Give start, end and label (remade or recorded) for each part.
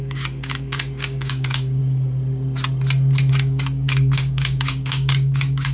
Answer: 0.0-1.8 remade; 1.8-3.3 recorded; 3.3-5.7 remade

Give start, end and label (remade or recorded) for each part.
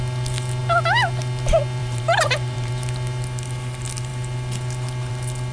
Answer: 0.0-1.8 recorded; 1.8-2.7 remade; 2.7-5.5 recorded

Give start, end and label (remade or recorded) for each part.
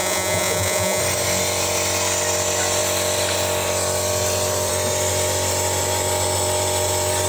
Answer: 0.0-1.0 remade; 1.0-7.3 recorded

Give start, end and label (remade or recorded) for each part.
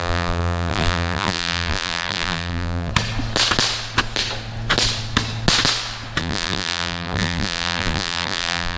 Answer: 0.0-2.9 remade; 2.9-6.2 recorded; 6.2-8.8 remade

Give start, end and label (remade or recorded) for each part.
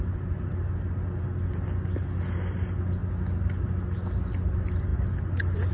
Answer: 0.0-5.7 recorded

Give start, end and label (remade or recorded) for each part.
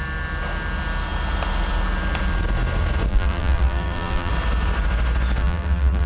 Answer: 0.0-3.1 recorded; 3.1-4.3 remade; 4.3-5.4 recorded; 5.4-6.1 remade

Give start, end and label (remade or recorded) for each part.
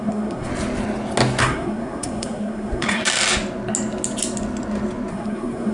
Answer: 0.0-0.5 remade; 0.5-1.4 recorded; 1.4-3.0 remade; 3.0-5.1 recorded; 5.1-5.7 remade